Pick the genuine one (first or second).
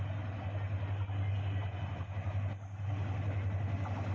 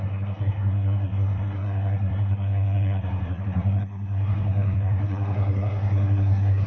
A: first